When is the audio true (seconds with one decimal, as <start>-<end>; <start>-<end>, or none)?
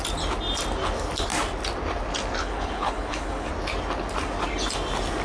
0.0-2.4; 3.5-5.2